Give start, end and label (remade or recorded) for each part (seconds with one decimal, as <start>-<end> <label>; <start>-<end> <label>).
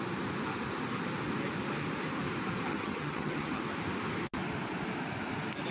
0.0-2.7 recorded; 2.7-3.6 remade; 3.6-5.7 recorded